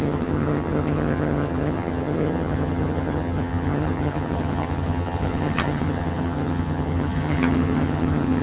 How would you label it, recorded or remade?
remade